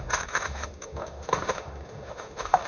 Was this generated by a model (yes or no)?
yes